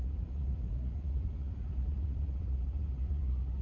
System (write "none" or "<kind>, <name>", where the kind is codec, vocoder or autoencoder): vocoder, Vocos